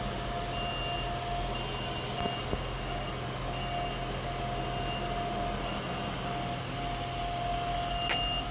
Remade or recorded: recorded